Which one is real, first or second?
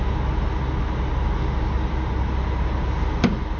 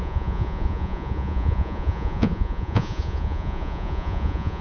first